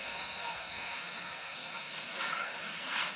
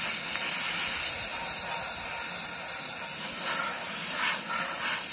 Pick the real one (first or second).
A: second